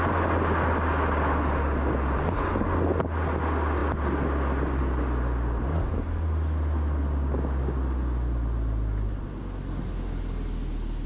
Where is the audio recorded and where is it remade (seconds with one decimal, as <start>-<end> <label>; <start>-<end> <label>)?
0.0-11.1 recorded